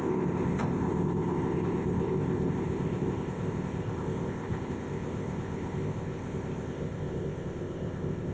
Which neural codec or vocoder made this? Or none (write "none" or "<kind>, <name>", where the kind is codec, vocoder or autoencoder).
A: codec, ZipCodec